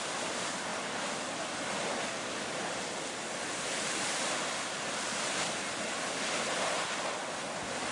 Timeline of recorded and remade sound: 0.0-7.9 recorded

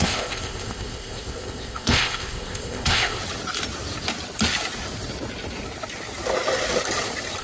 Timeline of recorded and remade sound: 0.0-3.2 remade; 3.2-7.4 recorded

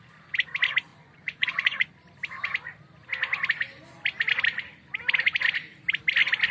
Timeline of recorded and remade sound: 0.0-0.9 recorded; 0.9-1.9 remade; 1.9-6.5 recorded

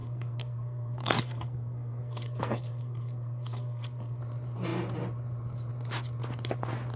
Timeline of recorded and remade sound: 0.0-4.2 remade; 4.2-7.0 recorded

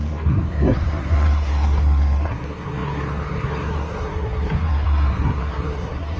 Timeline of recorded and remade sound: 0.0-6.2 remade

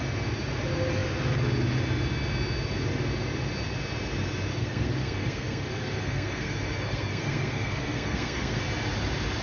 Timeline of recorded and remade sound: 0.0-4.5 recorded; 4.5-8.6 remade; 8.6-9.4 recorded

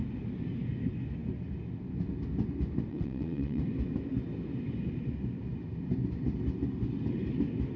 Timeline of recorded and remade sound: 0.0-2.9 recorded; 2.9-3.6 remade; 3.6-7.8 recorded

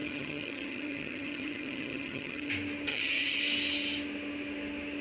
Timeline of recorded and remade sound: 0.0-2.5 remade; 2.5-2.9 recorded; 2.9-3.4 remade; 3.4-5.0 recorded